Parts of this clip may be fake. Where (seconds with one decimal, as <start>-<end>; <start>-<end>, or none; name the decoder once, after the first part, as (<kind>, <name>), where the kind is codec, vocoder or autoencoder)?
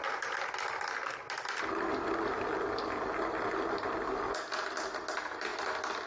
none